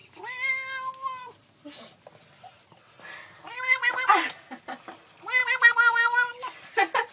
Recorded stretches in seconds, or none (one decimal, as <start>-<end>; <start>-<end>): 0.0-7.1